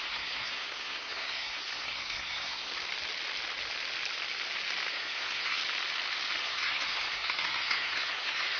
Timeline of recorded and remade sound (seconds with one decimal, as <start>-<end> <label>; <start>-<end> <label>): 0.0-2.7 remade; 2.7-4.9 recorded; 4.9-5.6 remade; 5.6-6.4 recorded; 6.4-8.6 remade